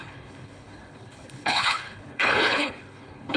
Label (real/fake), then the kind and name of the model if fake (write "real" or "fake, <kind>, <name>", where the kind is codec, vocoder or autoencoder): fake, codec, HILCodec